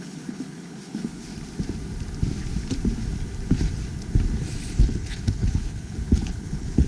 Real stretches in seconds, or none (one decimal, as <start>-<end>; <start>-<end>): 1.3-4.8